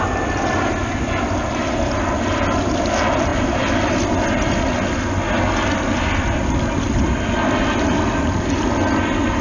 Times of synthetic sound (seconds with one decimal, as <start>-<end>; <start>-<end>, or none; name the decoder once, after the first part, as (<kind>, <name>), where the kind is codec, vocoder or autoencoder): none